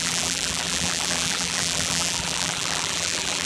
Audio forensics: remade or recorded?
remade